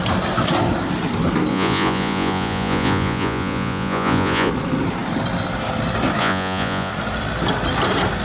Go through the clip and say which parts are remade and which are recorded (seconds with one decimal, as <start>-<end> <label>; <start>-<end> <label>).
0.0-1.5 recorded; 1.5-4.5 remade; 4.5-6.2 recorded; 6.2-6.9 remade; 6.9-8.2 recorded